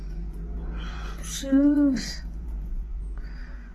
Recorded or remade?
remade